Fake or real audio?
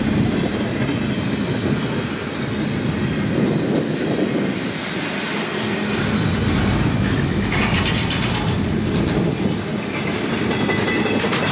real